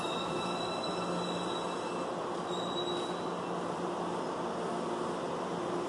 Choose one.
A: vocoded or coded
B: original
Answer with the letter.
B